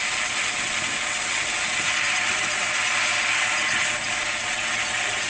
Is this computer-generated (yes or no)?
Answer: no